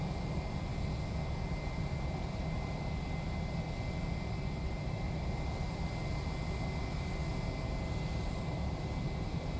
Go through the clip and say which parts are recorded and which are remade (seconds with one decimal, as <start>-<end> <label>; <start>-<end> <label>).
0.0-9.6 recorded